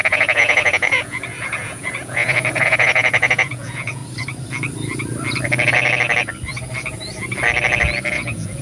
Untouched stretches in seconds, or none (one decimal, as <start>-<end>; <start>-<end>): 4.0-8.1